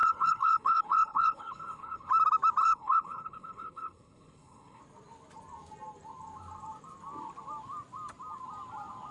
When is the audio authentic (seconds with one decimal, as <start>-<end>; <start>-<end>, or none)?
2.1-2.6; 4.8-9.1